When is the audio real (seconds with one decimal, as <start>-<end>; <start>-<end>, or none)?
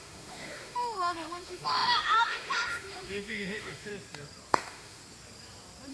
3.9-4.5; 5.0-5.9